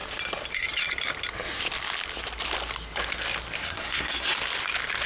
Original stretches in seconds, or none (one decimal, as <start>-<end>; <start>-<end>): 0.0-3.6; 4.4-5.1